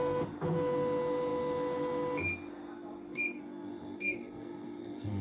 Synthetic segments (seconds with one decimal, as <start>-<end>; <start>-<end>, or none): 3.1-5.2